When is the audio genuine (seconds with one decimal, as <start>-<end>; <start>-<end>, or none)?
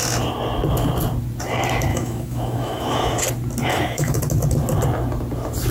0.0-1.9; 3.2-3.7; 4.2-5.7